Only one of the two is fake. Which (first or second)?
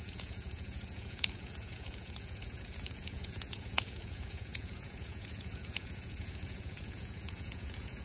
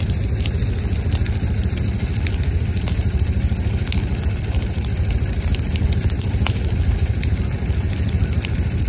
first